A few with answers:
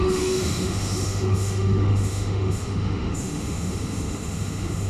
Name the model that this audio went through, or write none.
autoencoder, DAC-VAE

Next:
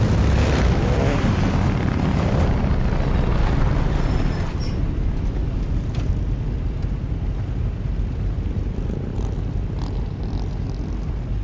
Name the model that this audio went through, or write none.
none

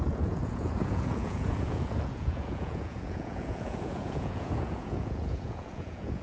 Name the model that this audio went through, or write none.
vocoder, Vocos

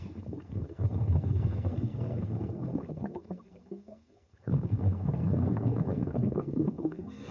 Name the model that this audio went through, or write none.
codec, SNAC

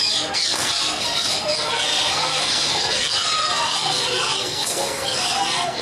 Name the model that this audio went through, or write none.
codec, SNAC